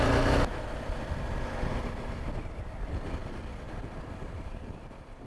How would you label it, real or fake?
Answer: real